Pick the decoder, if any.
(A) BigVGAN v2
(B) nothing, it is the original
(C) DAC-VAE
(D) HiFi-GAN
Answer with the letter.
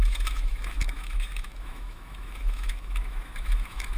C